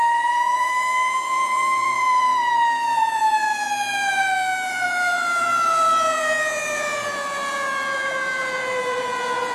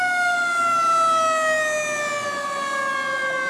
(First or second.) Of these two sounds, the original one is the second